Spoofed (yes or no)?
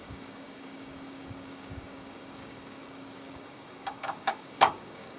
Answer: yes